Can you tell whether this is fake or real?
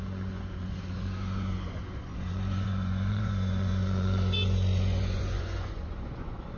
fake